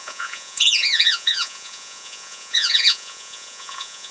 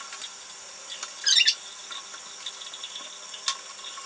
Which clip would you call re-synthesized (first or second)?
first